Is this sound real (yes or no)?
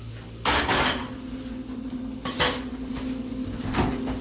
yes